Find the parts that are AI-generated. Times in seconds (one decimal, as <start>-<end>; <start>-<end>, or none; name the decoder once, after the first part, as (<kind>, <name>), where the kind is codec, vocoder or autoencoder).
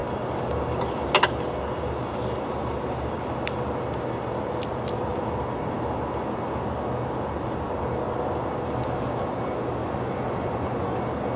9.8-11.0 (vocoder, Vocos)